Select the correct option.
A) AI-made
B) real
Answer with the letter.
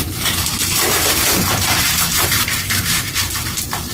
A